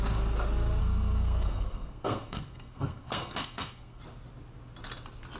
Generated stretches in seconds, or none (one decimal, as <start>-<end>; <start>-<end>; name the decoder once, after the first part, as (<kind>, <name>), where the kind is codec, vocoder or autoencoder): 0.8-4.0 (codec, SNAC)